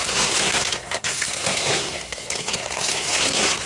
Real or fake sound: fake